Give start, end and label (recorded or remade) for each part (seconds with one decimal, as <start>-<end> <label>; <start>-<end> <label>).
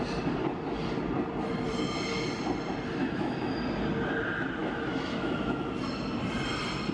0.0-3.0 recorded; 3.0-3.5 remade; 3.5-4.6 recorded; 4.6-5.7 remade; 5.7-6.9 recorded